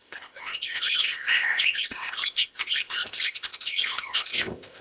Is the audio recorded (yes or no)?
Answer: no